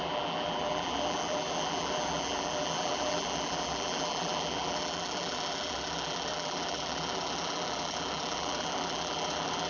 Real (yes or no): no